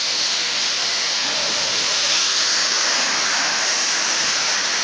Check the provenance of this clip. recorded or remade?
remade